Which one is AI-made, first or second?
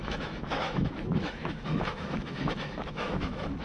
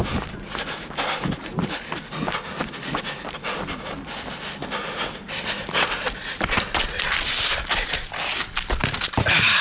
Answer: first